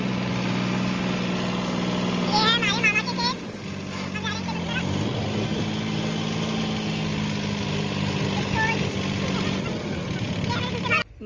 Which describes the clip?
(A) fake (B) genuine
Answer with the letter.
B